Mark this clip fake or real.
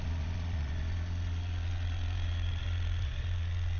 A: fake